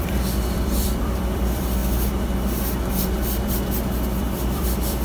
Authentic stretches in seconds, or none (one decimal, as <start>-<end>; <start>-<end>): 1.8-4.2